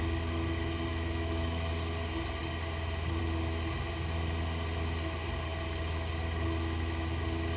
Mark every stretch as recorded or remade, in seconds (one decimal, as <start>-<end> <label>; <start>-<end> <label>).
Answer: 0.0-0.9 recorded; 0.9-1.7 remade; 1.7-7.6 recorded